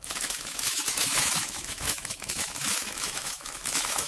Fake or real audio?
fake